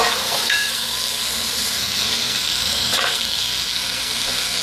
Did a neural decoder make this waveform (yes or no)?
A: yes